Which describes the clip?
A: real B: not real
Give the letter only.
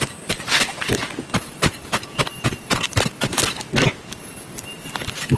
A